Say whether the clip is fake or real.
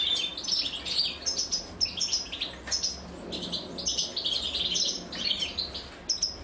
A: real